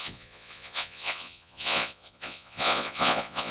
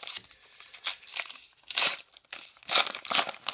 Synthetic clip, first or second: first